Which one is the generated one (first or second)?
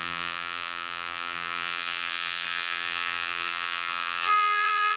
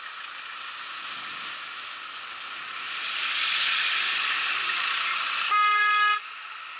first